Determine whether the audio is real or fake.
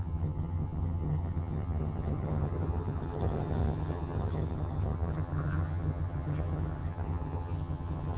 fake